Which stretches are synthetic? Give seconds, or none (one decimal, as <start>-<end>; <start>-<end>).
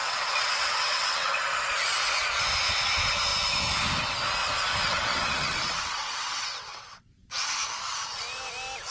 0.0-1.7; 4.8-7.1